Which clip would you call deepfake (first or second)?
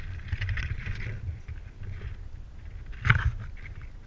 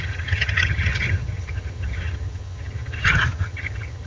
second